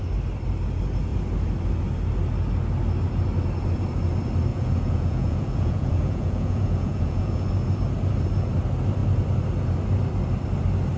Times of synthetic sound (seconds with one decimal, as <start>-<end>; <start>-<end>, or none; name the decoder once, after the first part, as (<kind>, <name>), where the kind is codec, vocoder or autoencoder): 4.5-7.5 (vocoder, Vocos)